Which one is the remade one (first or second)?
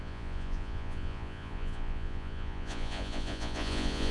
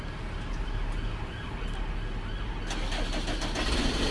first